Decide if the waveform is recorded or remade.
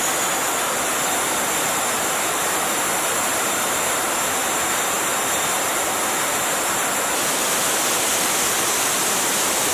recorded